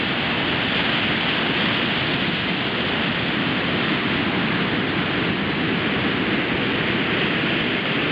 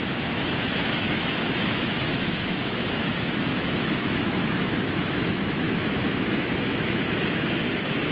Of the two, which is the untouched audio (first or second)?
first